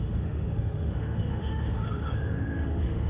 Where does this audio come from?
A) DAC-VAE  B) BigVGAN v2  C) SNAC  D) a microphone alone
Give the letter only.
A